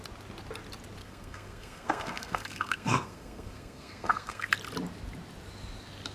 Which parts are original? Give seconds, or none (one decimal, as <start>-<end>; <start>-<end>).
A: 0.0-1.0; 4.5-6.1

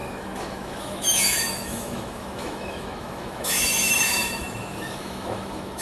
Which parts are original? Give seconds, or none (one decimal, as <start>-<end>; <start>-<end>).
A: none

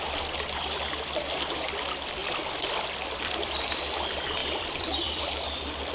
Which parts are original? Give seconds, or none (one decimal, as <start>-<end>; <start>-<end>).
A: 0.0-2.2; 3.5-4.4; 5.2-5.9

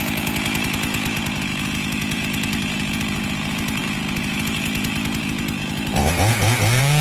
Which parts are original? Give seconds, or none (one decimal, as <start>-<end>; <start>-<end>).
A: none

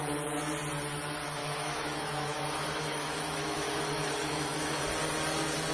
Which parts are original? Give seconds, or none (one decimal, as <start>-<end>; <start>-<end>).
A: 0.0-1.4; 4.8-5.7

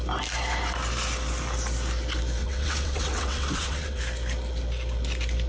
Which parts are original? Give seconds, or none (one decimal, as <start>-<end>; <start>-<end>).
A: 0.0-2.4; 4.0-5.5